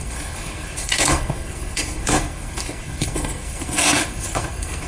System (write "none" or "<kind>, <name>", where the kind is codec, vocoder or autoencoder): codec, SNAC